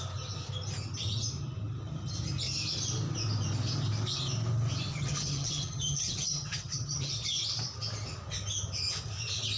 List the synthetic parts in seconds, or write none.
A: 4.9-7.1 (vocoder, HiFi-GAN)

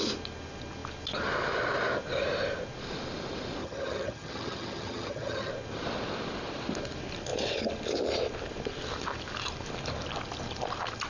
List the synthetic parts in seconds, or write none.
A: 3.6-5.5 (vocoder, HiFi-GAN)

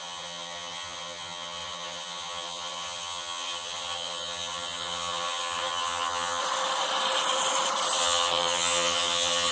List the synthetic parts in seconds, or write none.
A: 0.0-6.4 (vocoder, HiFi-GAN); 8.0-9.5

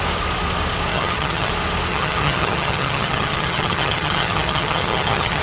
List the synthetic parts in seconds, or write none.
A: 0.9-1.5 (vocoder, HiFi-GAN); 1.9-5.4

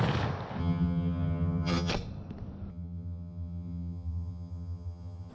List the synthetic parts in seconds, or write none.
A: 0.6-1.9 (vocoder, HiFi-GAN); 2.7-5.3